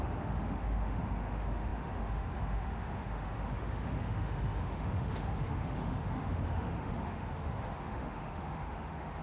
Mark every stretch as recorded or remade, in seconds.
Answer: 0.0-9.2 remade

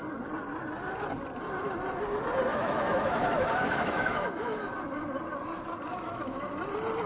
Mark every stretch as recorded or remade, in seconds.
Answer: 0.0-2.5 recorded; 2.5-4.7 remade; 4.7-5.9 recorded; 5.9-6.5 remade; 6.5-7.1 recorded

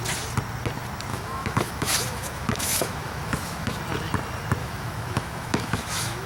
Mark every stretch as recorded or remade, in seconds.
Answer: 0.0-1.1 recorded; 1.1-3.8 remade; 3.8-4.6 recorded; 4.6-6.3 remade

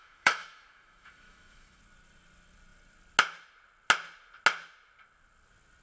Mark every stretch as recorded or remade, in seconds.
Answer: 0.0-1.8 remade; 1.8-5.8 recorded

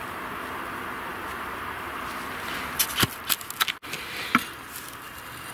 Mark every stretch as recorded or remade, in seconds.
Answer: 0.0-5.5 recorded